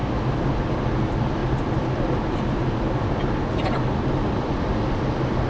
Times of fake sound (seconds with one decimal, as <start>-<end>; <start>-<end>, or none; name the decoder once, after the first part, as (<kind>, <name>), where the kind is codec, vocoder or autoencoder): none